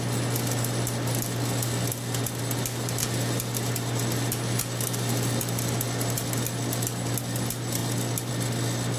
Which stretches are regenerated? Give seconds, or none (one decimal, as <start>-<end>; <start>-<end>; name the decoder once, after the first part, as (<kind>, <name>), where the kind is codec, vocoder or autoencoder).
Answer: none